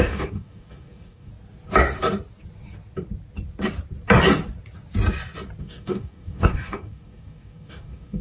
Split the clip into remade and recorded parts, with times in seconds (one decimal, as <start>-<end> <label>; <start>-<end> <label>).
0.0-1.3 remade; 1.3-5.6 recorded; 5.6-8.2 remade